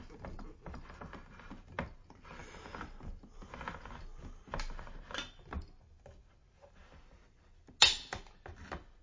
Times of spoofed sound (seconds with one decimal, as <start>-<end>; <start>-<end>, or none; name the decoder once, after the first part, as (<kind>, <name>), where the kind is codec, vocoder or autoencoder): none